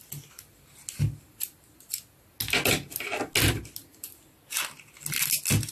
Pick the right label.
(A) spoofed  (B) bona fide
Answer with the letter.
B